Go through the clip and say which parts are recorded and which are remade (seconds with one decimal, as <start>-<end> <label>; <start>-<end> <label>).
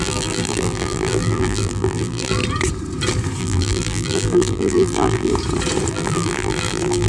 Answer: 0.0-2.4 remade; 2.4-3.4 recorded; 3.4-5.3 remade; 5.3-5.9 recorded; 5.9-7.1 remade